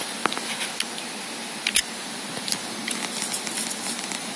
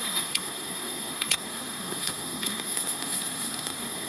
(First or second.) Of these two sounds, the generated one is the second